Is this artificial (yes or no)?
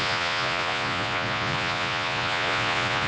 yes